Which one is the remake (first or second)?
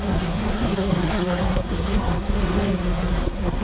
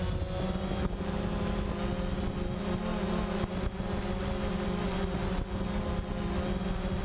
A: first